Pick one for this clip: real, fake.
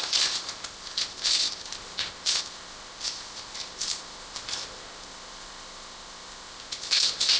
fake